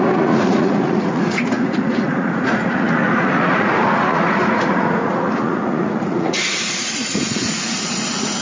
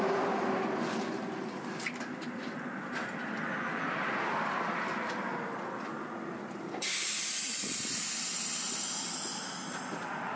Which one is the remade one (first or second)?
first